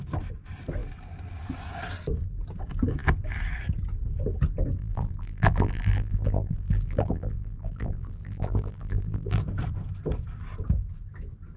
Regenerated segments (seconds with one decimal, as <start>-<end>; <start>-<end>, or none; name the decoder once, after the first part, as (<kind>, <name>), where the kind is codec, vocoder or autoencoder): 4.8-9.4 (vocoder, BigVGAN v2)